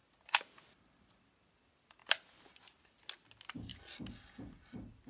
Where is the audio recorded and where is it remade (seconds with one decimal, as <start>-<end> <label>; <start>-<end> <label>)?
0.0-5.1 recorded